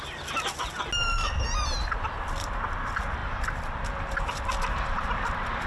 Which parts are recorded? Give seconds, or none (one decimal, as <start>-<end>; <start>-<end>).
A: 0.0-5.7